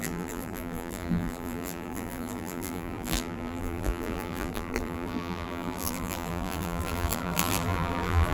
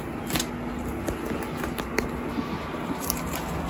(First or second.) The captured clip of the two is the second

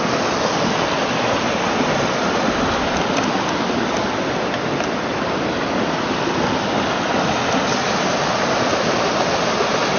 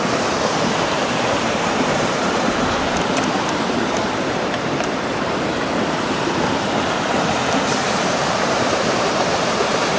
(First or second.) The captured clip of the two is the first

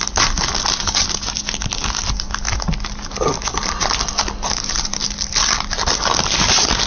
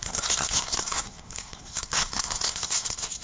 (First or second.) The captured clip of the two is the first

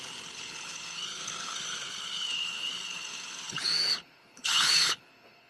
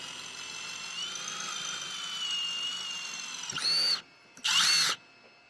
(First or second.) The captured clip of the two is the second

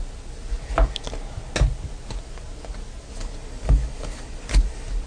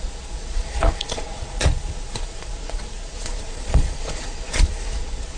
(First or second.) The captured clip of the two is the first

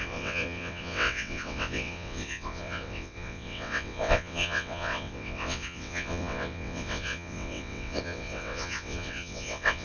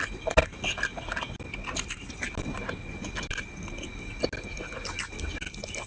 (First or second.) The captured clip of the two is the second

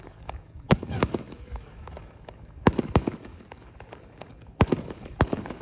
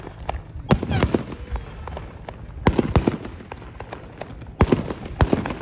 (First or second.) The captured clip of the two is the second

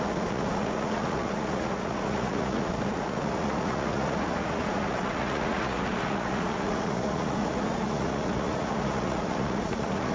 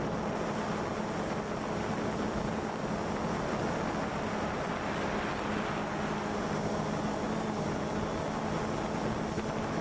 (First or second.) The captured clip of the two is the second